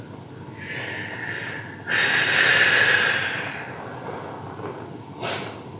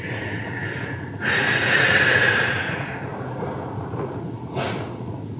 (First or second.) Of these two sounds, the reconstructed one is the second